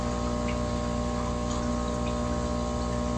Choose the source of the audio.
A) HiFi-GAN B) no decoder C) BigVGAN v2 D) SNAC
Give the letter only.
B